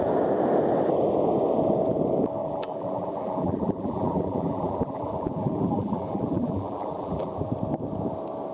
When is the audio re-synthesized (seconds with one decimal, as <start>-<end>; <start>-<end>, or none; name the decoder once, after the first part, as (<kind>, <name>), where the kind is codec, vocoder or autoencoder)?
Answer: 2.4-7.5 (vocoder, BigVGAN v2)